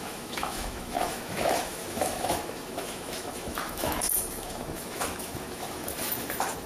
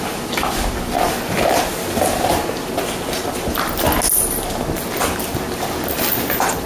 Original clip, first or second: second